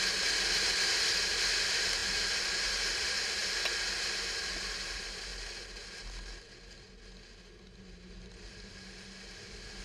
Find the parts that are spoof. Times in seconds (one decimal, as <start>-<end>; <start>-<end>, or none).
none